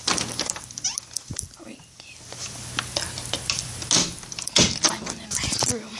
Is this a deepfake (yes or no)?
no